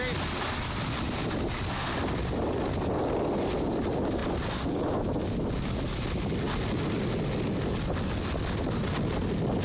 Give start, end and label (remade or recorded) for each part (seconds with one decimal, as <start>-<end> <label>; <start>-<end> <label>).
0.0-9.6 recorded